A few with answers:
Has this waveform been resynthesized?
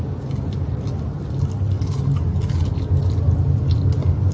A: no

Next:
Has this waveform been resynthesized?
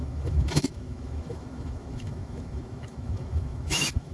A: yes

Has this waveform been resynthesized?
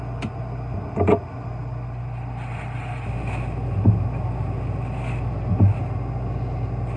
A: no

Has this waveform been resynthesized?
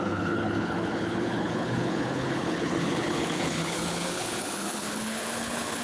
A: yes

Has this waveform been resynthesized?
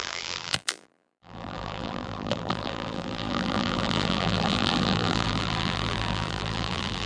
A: yes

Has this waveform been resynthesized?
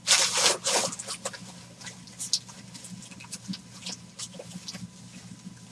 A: no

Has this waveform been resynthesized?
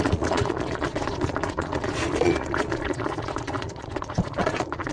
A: yes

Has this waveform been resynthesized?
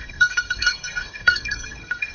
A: yes